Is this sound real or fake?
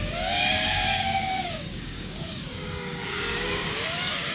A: fake